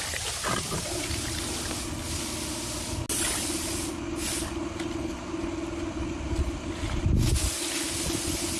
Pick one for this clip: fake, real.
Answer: real